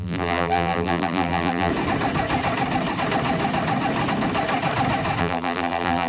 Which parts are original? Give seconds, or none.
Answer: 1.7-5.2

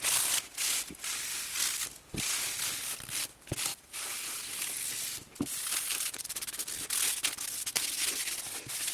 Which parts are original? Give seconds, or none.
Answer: 0.0-3.7; 4.4-5.5; 6.5-8.9

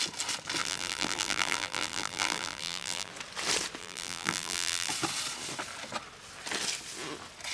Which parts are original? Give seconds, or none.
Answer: 0.0-0.6; 3.1-3.8; 4.9-7.5

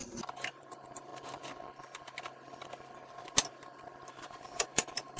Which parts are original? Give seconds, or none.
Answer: 0.0-0.5; 1.1-4.1